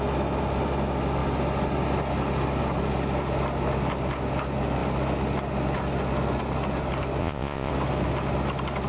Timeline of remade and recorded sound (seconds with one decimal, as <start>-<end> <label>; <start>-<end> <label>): 0.0-7.2 recorded; 7.2-7.7 remade; 7.7-8.9 recorded